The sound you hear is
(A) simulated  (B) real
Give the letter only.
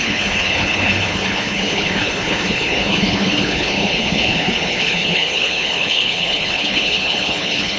A